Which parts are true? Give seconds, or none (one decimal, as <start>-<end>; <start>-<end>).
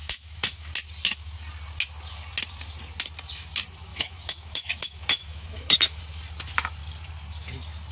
0.7-3.9; 6.0-7.9